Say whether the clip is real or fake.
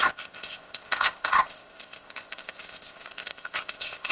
fake